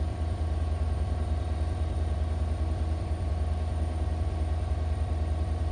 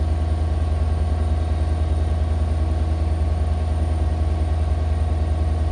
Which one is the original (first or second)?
second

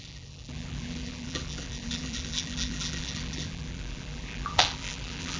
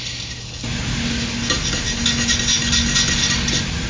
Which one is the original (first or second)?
second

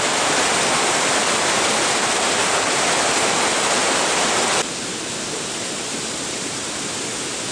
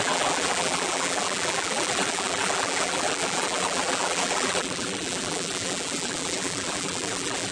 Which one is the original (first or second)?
first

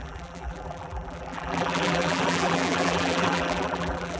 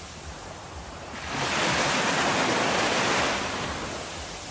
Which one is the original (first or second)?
second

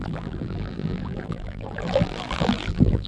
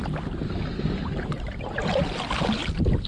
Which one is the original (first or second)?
second